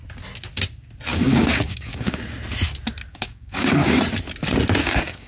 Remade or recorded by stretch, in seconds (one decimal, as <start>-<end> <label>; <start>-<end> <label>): 0.0-1.1 recorded; 1.1-2.2 remade; 2.2-3.1 recorded; 3.1-4.0 remade; 4.0-4.8 recorded; 4.8-5.3 remade